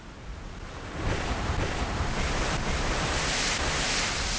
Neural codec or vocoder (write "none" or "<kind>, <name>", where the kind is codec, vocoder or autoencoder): none